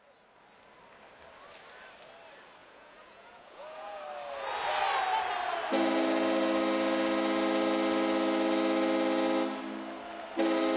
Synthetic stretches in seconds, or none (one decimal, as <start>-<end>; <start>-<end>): 2.6-4.0